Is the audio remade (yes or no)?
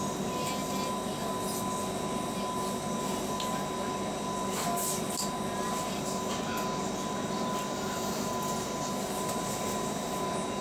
no